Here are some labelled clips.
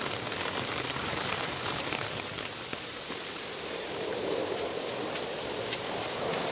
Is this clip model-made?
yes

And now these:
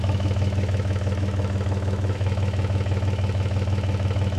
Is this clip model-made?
yes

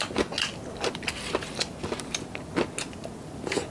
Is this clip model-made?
no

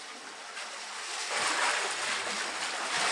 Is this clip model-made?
no